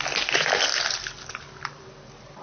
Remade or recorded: recorded